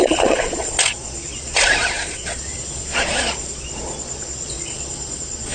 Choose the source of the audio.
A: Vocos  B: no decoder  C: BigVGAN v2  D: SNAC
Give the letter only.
A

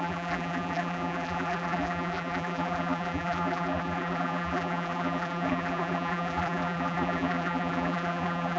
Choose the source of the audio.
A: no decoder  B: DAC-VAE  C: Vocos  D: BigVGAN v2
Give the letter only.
D